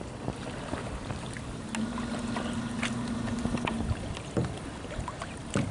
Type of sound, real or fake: real